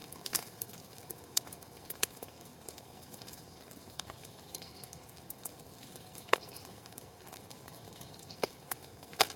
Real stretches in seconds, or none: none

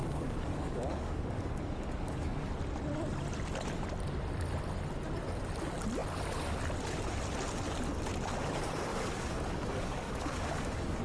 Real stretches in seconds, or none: 2.5-8.9